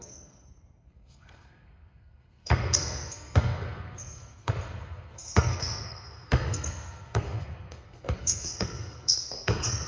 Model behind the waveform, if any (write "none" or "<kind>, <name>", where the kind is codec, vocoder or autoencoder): codec, SNAC